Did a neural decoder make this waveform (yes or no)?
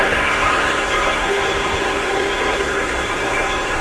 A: yes